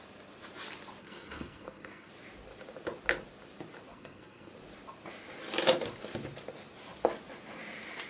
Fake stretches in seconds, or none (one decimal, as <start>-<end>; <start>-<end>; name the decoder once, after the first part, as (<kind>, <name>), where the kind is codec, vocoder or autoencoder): 1.0-2.1 (codec, SNAC); 3.9-4.5

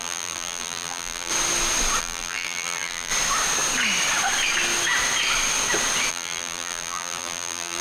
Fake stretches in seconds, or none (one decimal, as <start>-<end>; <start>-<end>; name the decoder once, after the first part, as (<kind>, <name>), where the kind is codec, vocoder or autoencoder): 0.0-1.3 (vocoder, BigVGAN v2); 2.0-3.1; 6.1-7.8